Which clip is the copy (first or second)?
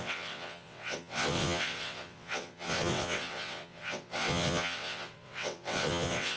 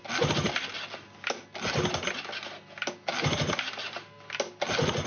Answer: first